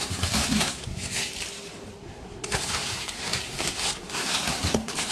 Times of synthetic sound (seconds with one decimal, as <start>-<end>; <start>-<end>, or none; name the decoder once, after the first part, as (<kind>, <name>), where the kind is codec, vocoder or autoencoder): 0.0-1.3 (codec, SNAC); 2.0-5.1